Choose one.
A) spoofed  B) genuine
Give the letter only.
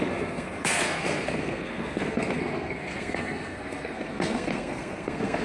A